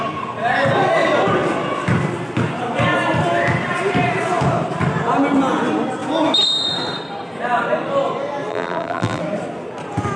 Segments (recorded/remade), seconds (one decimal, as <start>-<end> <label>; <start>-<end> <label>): 0.0-8.5 recorded; 8.5-9.2 remade; 9.2-10.2 recorded